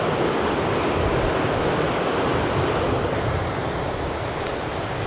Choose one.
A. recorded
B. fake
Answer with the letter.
A